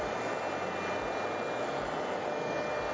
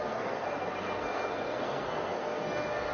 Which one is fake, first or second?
second